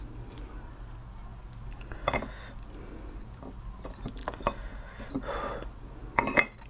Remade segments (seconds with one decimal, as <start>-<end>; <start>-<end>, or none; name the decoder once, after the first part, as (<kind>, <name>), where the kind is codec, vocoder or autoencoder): none